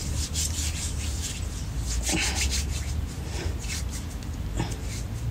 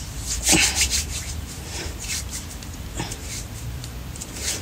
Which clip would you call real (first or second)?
first